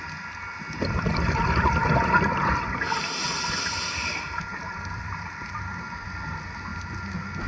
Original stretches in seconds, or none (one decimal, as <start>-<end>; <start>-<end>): 0.0-1.1; 4.0-4.5; 5.6-7.5